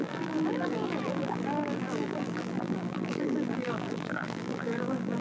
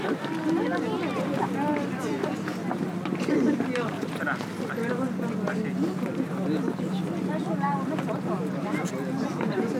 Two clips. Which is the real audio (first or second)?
second